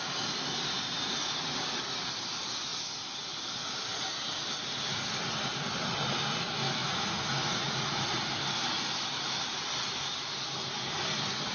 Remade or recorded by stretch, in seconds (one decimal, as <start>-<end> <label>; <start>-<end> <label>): 0.0-6.8 recorded; 6.8-8.3 remade; 8.3-11.5 recorded